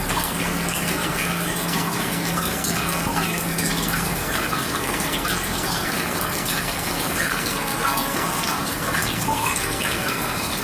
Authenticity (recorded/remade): remade